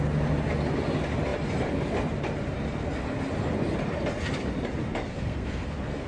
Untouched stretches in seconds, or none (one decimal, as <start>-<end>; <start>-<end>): 0.0-5.1